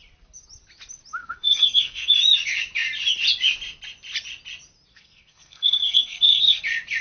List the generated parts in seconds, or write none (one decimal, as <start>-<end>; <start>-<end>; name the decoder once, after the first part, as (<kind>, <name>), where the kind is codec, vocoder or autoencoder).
1.2-2.1 (codec, SNAC); 4.9-6.6